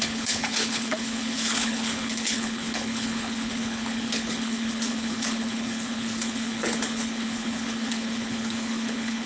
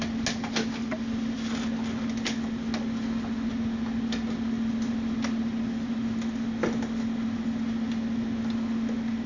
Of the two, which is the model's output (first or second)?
first